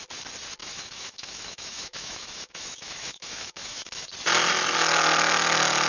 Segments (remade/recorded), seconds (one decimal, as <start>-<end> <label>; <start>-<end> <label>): 0.0-0.6 recorded; 0.6-4.1 remade; 4.1-5.9 recorded